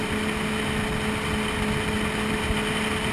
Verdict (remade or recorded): recorded